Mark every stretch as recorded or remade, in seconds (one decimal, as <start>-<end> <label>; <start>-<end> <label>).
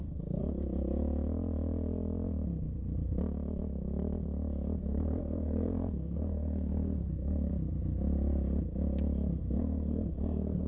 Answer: 0.0-0.4 remade; 0.4-4.8 recorded; 4.8-7.5 remade; 7.5-9.4 recorded; 9.4-10.7 remade